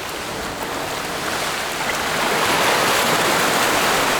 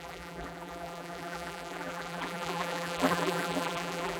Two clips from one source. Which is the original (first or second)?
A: first